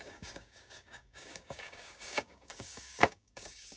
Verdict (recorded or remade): remade